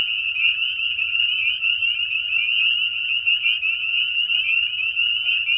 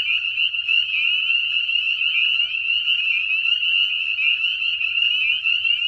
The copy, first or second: first